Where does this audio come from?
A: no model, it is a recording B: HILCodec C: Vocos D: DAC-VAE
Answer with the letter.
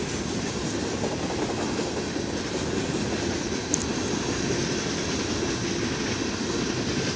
A